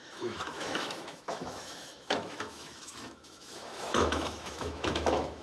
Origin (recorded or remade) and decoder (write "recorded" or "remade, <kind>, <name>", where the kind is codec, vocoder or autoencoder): remade, autoencoder, DAC-VAE